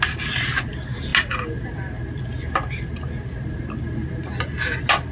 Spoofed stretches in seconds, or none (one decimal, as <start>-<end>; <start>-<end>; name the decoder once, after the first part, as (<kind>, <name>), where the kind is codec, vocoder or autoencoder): none